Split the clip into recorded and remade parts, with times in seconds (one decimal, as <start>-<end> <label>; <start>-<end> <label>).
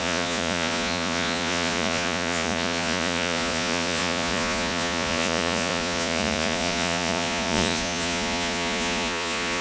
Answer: 0.0-9.6 remade